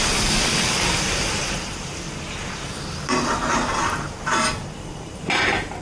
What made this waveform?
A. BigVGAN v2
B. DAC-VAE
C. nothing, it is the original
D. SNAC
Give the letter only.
A